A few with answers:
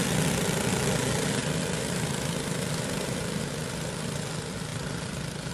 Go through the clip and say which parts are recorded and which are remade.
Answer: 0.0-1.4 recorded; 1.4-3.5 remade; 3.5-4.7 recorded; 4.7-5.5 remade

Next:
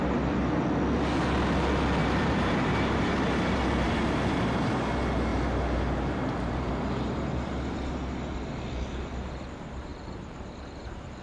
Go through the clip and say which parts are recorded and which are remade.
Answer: 0.0-2.0 recorded; 2.0-4.7 remade; 4.7-5.3 recorded; 5.3-6.7 remade; 6.7-9.9 recorded; 9.9-11.2 remade

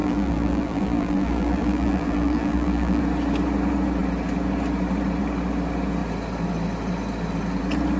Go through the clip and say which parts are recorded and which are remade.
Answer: 0.0-3.0 remade; 3.0-8.0 recorded

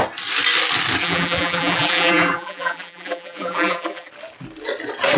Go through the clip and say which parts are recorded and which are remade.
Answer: 0.0-1.0 recorded; 1.0-4.1 remade; 4.1-5.2 recorded

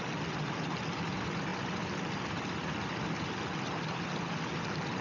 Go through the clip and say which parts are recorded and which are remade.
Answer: 0.0-5.0 recorded

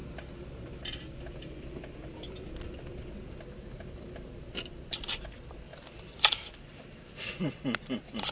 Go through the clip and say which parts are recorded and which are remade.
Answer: 0.0-4.7 recorded; 4.7-8.3 remade

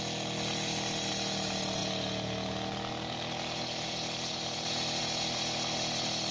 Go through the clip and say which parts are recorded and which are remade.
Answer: 0.0-6.3 recorded

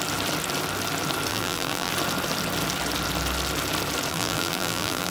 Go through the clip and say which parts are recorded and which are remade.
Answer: 0.0-1.3 recorded; 1.3-1.9 remade; 1.9-4.1 recorded; 4.1-5.1 remade